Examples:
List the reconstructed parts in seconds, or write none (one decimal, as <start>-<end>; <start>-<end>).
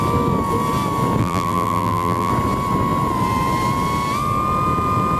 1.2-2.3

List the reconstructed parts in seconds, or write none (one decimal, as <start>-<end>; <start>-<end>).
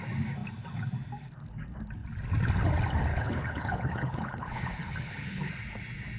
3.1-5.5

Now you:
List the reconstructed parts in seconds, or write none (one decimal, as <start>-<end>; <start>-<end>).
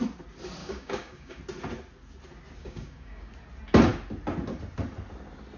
0.6-1.4; 2.6-3.3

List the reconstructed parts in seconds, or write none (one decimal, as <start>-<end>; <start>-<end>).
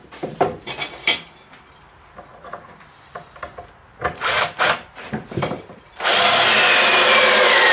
0.0-2.1; 4.0-6.5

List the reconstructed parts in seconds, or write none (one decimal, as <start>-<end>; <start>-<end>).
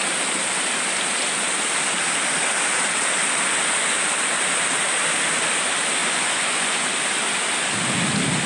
6.0-6.9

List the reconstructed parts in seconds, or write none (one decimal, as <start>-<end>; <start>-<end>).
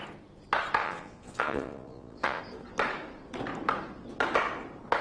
0.8-2.4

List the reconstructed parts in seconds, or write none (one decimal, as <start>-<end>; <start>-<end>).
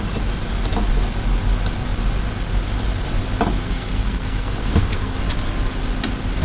3.6-5.2